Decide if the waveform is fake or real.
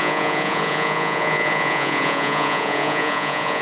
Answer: fake